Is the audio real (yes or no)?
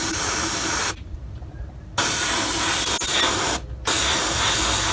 yes